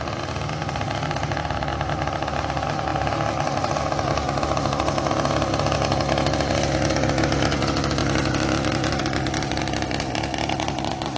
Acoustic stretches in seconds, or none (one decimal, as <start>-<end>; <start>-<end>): 0.0-0.6; 1.7-11.2